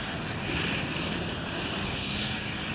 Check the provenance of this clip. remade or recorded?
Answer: recorded